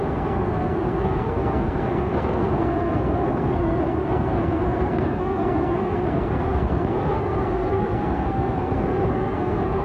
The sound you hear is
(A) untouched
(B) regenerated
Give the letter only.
B